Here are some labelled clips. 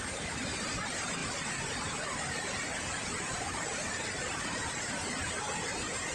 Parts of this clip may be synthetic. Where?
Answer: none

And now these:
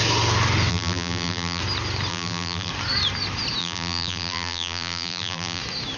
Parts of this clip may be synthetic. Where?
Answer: 0.7-1.6; 2.1-2.7; 3.6-5.6

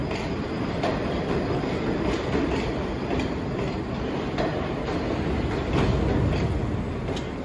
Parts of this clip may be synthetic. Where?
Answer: 0.0-4.4